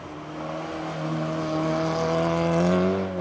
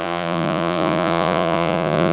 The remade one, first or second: second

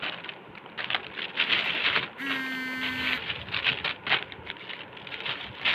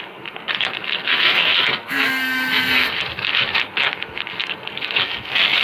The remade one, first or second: second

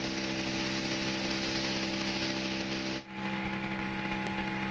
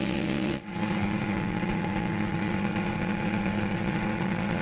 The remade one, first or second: second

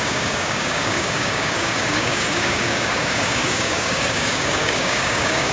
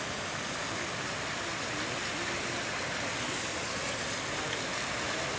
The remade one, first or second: first